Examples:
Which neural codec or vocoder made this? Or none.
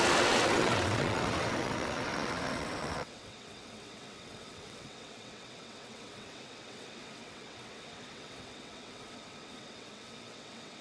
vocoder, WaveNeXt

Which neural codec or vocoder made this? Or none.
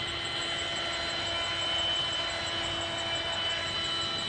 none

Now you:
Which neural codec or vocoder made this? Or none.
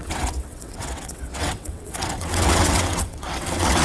vocoder, WaveNeXt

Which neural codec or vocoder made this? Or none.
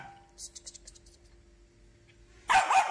none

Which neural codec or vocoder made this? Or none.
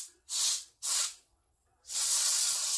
vocoder, WaveNeXt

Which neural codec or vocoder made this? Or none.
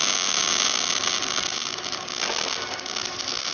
none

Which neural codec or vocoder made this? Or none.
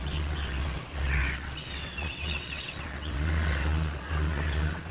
vocoder, WaveNeXt